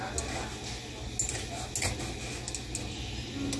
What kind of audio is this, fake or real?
real